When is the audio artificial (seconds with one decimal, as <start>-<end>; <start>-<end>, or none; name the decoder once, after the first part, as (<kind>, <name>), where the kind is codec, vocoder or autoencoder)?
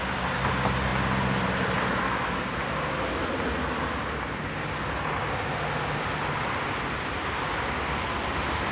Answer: none